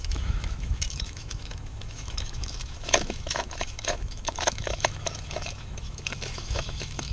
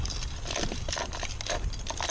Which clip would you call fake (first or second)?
first